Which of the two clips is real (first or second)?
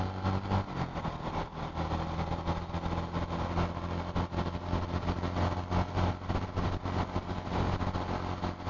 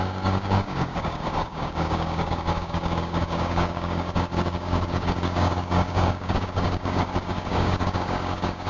first